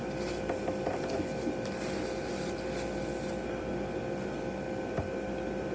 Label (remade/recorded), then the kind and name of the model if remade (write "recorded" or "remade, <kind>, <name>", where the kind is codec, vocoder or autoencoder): recorded